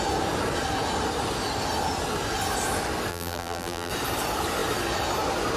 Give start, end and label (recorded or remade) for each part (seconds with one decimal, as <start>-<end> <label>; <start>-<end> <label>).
0.0-3.1 recorded; 3.1-3.9 remade; 3.9-5.6 recorded